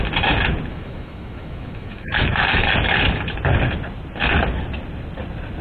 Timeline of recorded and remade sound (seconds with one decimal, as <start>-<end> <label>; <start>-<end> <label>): 0.0-0.7 recorded; 0.7-2.7 remade; 2.7-5.6 recorded